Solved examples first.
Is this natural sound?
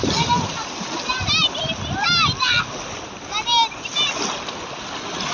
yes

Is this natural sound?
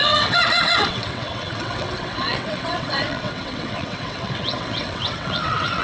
no